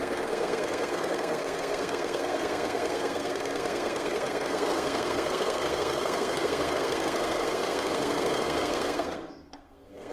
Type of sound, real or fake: fake